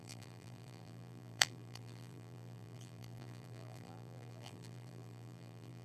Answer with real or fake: fake